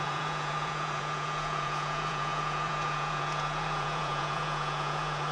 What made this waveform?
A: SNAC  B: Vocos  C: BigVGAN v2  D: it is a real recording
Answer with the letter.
B